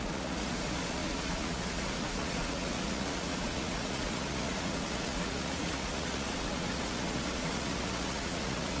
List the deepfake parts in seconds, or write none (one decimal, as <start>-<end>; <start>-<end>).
0.0-8.8

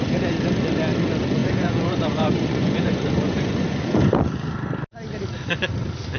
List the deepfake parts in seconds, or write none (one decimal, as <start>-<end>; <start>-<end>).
1.4-4.0

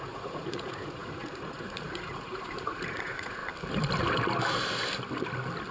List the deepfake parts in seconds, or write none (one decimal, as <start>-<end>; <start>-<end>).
0.0-3.4

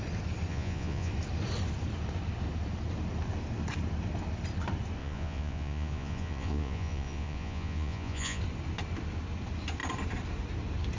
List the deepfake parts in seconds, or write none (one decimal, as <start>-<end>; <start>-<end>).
0.5-1.1; 5.0-8.4

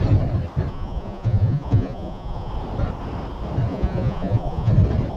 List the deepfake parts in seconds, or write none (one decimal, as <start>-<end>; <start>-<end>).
0.7-2.5; 3.7-4.7

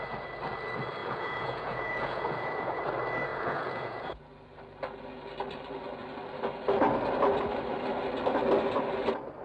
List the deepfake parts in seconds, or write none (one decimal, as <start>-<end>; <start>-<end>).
1.0-2.8; 3.3-4.2

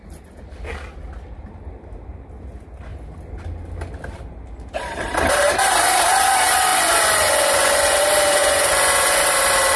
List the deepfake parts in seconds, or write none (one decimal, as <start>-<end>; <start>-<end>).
6.7-8.0; 8.4-9.2